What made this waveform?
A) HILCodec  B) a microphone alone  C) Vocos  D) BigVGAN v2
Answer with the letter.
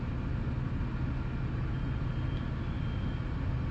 B